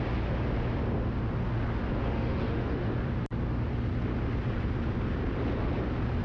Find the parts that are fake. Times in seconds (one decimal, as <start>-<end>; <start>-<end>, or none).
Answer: 2.0-2.9